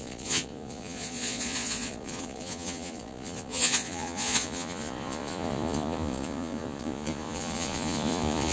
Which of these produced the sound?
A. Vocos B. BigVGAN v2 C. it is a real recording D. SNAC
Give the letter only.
A